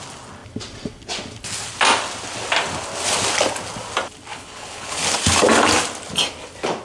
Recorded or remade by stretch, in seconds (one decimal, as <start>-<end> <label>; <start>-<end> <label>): 0.0-4.3 recorded; 4.3-5.0 remade; 5.0-6.8 recorded